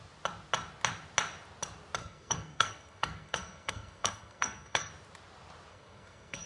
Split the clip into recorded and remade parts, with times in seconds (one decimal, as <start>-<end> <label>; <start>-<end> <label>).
0.0-2.0 recorded; 2.0-4.9 remade; 4.9-5.7 recorded; 5.7-6.5 remade